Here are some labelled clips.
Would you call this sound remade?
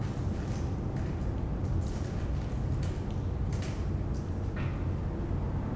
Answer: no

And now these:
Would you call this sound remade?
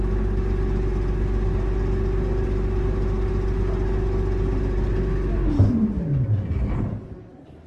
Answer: no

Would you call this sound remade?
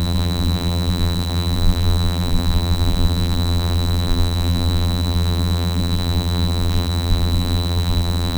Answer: yes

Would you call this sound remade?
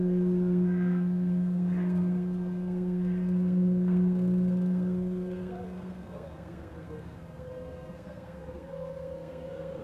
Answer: yes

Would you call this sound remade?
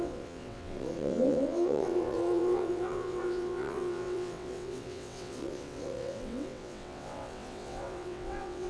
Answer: yes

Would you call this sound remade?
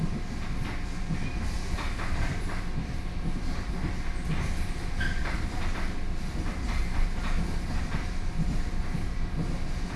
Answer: no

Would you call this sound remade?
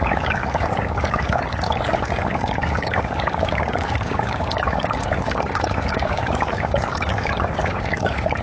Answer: yes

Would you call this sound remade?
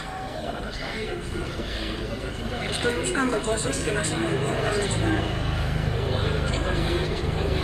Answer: yes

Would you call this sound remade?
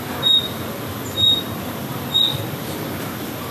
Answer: no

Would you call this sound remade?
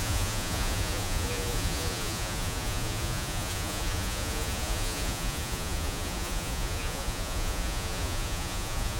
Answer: yes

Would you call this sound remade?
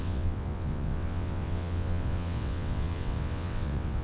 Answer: yes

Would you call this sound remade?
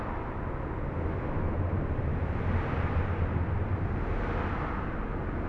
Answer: no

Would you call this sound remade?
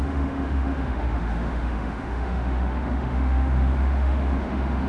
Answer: yes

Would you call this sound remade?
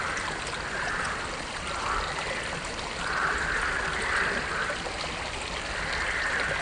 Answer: no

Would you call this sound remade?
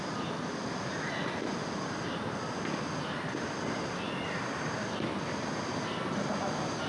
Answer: no